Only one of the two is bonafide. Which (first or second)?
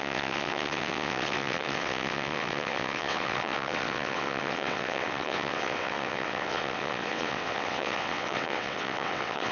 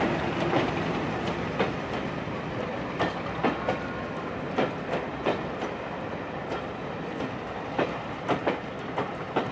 second